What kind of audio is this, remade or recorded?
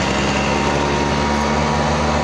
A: recorded